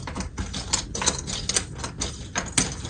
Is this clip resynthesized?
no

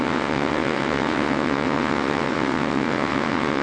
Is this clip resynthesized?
yes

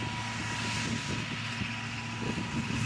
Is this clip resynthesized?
no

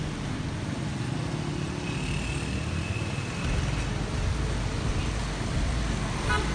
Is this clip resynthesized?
no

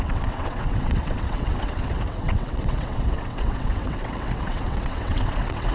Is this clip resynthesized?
yes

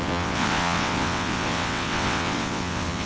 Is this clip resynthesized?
yes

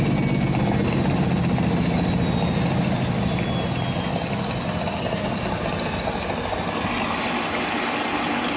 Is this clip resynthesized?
no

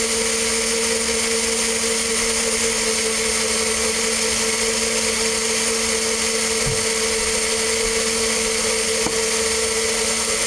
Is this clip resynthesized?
no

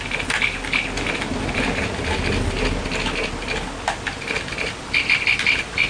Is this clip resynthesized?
no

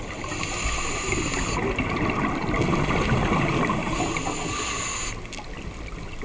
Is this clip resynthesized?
no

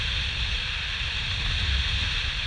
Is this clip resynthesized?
no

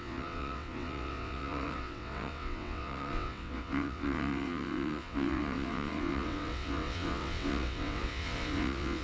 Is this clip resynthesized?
yes